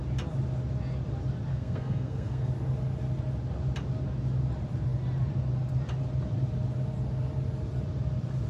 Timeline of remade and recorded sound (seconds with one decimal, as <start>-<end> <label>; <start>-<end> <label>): 0.0-1.5 recorded; 1.5-2.5 remade; 2.5-8.5 recorded